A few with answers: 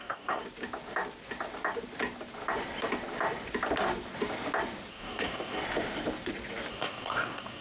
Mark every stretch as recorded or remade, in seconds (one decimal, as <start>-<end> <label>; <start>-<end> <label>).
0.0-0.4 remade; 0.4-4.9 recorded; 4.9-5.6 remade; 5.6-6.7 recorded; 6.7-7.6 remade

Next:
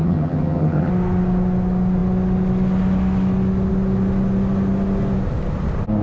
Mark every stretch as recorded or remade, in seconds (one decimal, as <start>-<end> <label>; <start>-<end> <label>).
0.0-0.9 remade; 0.9-6.0 recorded

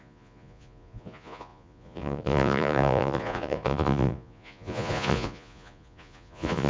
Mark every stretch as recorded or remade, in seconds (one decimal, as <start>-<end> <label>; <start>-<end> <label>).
0.0-6.7 remade

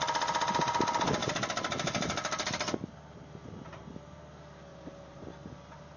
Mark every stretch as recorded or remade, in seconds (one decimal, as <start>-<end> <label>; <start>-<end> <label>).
0.0-4.7 recorded; 4.7-5.2 remade; 5.2-6.0 recorded

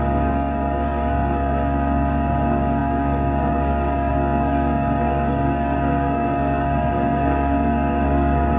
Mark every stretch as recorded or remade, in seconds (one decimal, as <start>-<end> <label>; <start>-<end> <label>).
0.0-8.6 remade

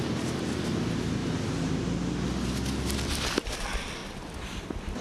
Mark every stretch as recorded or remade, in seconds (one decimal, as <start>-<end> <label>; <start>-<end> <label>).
0.0-5.0 recorded